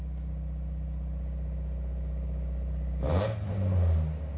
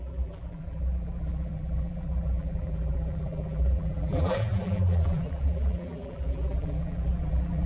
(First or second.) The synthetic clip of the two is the second